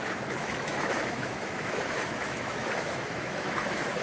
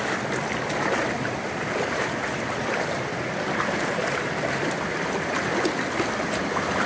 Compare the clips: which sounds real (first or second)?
second